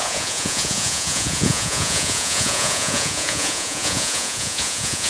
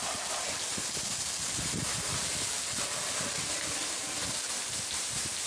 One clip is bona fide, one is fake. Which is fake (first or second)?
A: first